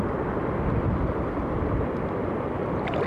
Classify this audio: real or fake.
fake